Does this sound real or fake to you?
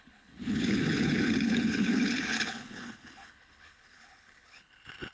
fake